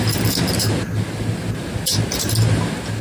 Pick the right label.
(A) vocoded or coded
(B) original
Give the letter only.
B